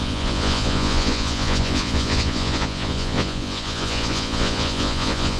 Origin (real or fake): fake